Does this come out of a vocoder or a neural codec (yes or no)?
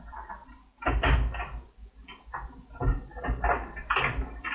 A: no